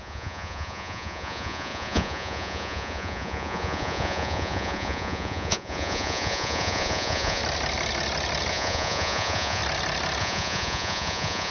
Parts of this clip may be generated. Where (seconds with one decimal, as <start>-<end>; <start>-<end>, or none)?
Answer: 0.0-7.4; 8.5-9.6; 10.2-11.5